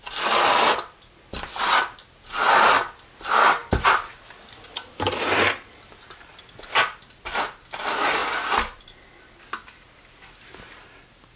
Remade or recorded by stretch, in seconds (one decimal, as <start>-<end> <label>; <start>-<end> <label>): 0.0-11.4 recorded